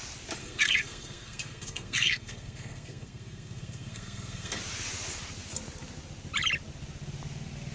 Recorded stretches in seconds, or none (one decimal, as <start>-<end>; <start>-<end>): 0.0-0.4; 4.6-7.7